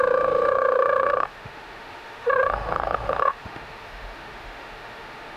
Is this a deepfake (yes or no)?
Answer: yes